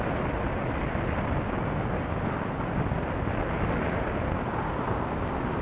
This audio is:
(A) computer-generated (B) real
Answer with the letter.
B